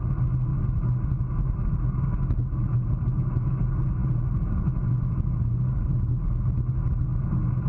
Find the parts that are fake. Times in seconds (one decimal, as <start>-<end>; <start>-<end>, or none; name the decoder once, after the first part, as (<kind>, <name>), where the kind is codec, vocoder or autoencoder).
none